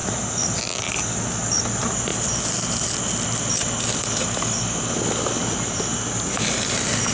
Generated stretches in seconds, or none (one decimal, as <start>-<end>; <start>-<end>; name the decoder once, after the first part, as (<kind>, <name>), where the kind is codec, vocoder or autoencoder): none